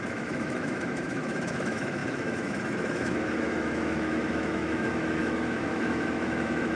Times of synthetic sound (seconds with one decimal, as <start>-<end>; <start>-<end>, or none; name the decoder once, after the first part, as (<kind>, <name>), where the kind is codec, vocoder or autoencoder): 0.0-6.7 (autoencoder, DAC-VAE)